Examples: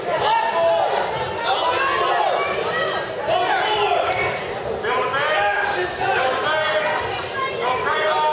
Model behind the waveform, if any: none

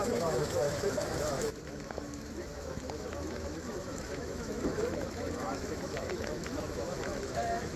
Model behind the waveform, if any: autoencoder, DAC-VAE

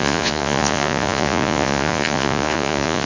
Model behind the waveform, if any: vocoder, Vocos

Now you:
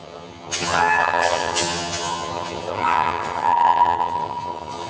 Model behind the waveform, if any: vocoder, HiFi-GAN